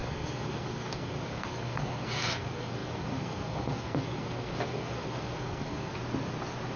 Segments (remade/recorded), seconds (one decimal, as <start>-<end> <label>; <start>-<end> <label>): 0.0-5.9 remade; 5.9-6.8 recorded

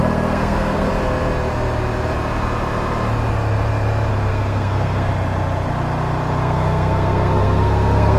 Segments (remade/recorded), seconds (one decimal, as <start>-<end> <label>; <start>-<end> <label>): 0.0-0.9 remade; 0.9-4.3 recorded; 4.3-5.1 remade; 5.1-6.4 recorded; 6.4-8.2 remade